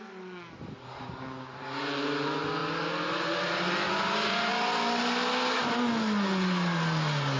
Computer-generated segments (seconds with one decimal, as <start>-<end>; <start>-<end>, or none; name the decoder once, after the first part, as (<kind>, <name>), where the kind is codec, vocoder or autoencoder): none